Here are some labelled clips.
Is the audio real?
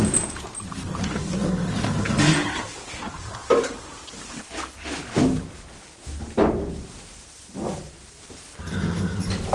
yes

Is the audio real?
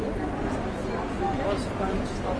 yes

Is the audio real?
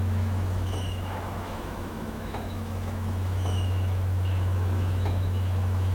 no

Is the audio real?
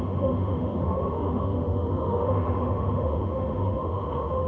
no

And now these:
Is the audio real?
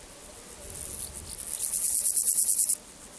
yes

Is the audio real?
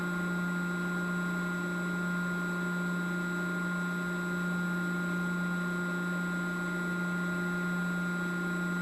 yes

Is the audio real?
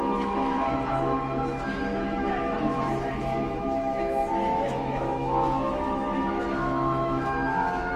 no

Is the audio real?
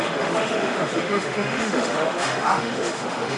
no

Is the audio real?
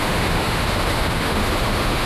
no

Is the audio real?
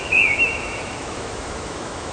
no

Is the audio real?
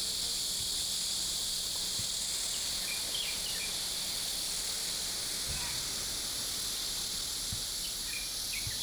yes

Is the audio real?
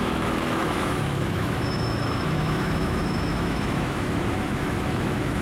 no